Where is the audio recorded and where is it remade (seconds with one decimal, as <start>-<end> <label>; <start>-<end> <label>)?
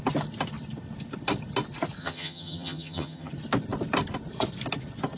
0.0-2.0 recorded; 2.0-3.3 remade; 3.3-5.2 recorded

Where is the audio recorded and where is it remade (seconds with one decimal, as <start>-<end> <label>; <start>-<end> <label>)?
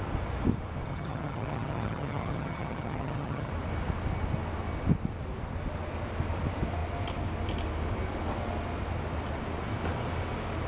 0.0-0.9 recorded; 0.9-3.5 remade; 3.5-10.7 recorded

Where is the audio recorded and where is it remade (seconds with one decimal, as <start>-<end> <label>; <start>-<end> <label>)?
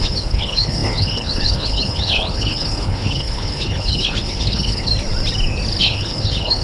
0.0-4.9 remade; 4.9-5.8 recorded; 5.8-6.6 remade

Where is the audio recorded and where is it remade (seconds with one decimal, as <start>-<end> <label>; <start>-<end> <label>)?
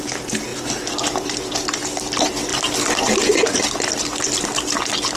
0.0-5.2 recorded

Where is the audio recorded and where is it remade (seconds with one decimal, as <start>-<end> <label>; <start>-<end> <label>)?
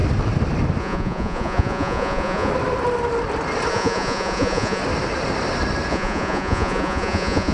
0.0-0.8 recorded; 0.8-2.5 remade; 2.5-3.7 recorded; 3.7-4.8 remade; 4.8-5.9 recorded; 5.9-7.5 remade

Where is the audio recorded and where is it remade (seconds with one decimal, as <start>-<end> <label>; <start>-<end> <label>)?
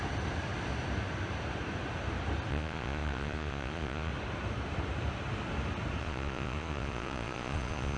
0.0-2.5 recorded; 2.5-4.1 remade; 4.1-6.0 recorded; 6.0-8.0 remade